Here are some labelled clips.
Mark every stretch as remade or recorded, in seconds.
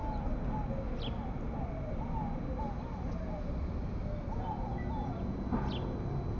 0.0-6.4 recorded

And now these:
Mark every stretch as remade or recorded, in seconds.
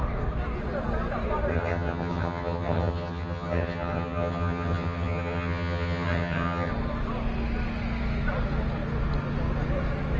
0.0-1.5 recorded; 1.5-6.7 remade; 6.7-10.2 recorded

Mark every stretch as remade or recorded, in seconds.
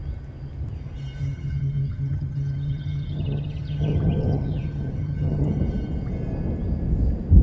0.0-1.2 recorded; 1.2-5.6 remade; 5.6-7.4 recorded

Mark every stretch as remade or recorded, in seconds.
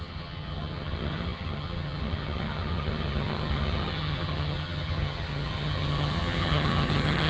0.0-7.3 remade